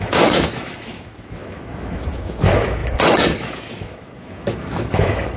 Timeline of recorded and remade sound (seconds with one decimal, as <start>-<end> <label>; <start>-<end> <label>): 0.0-5.4 remade